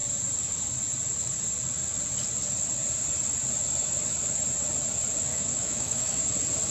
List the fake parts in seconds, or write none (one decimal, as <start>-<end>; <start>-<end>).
5.3-6.3